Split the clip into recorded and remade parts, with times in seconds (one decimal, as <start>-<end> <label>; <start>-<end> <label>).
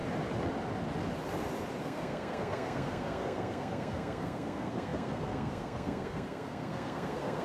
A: 0.0-1.8 recorded; 1.8-7.4 remade